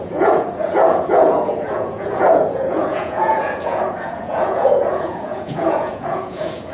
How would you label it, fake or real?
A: fake